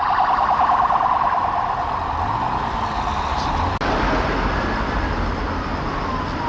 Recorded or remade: recorded